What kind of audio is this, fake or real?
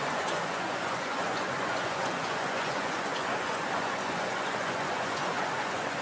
fake